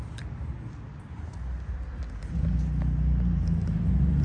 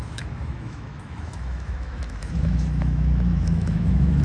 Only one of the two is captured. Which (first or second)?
first